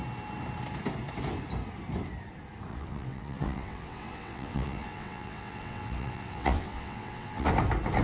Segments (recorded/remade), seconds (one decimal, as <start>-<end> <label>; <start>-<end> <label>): 0.0-2.7 recorded; 2.7-7.5 remade; 7.5-8.0 recorded